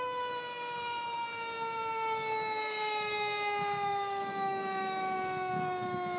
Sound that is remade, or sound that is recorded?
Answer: remade